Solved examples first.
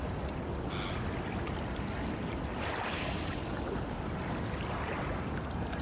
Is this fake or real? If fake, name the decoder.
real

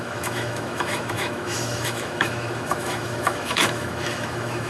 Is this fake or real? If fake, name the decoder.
fake, autoencoder, DAC-VAE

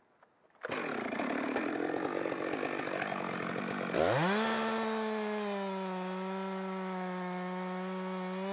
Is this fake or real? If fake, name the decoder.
real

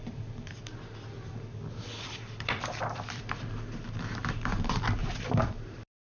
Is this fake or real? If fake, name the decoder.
fake, vocoder, BigVGAN v2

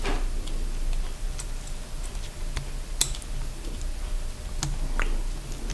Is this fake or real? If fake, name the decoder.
real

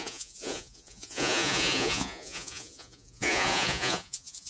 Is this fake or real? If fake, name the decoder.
fake, vocoder, Vocos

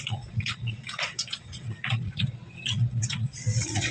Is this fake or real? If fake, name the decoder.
fake, vocoder, Vocos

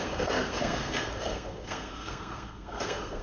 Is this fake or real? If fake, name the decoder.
fake, codec, SNAC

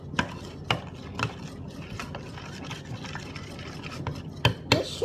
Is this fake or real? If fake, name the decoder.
real